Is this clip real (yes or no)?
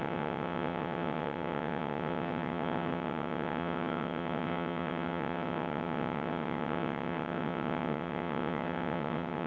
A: no